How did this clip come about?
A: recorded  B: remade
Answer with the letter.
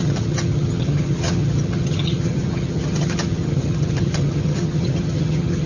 B